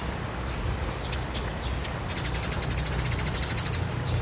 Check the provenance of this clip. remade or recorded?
recorded